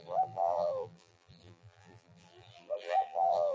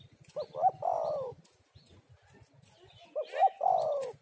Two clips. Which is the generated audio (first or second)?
first